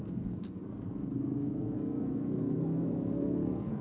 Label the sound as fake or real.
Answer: fake